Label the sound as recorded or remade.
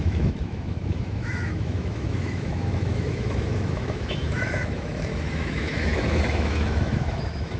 remade